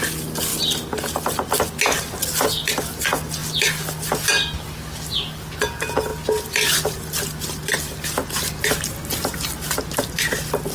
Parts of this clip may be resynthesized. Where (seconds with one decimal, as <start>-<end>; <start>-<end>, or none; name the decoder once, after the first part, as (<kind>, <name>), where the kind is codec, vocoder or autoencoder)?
none